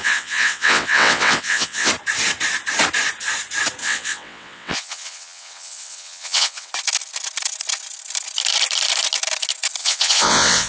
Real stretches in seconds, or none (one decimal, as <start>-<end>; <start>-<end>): 1.9-3.8; 6.7-9.8

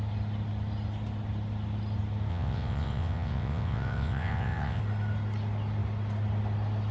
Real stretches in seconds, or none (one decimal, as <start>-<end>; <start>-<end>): 0.0-2.3; 4.8-6.9